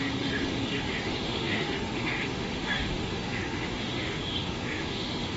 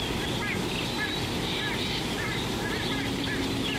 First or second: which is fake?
first